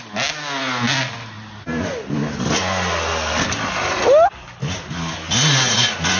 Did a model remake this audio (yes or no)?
no